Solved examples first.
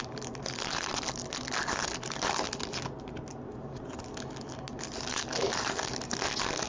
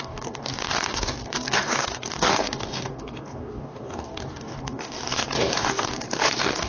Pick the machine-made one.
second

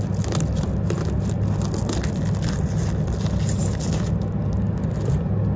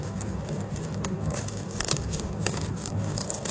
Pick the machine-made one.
second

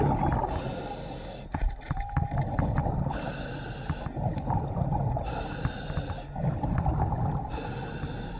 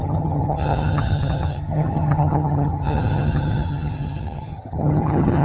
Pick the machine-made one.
second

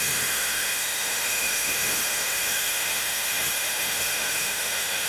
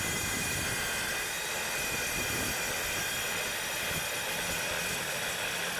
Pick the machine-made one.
first